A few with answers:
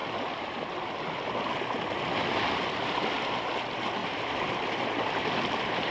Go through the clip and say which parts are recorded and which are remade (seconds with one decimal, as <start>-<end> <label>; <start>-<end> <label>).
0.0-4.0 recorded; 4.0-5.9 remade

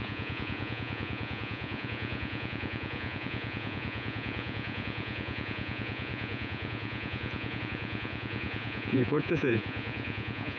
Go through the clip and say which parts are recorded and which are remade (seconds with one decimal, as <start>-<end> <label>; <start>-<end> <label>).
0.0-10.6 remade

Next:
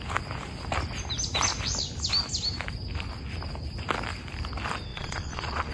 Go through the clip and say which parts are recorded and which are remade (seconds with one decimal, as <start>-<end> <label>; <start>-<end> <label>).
0.0-4.9 recorded; 4.9-5.7 remade

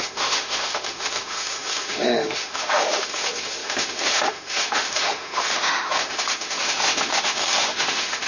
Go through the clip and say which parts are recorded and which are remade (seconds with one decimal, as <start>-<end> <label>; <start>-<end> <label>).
0.0-8.3 remade